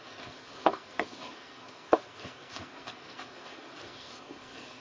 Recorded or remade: remade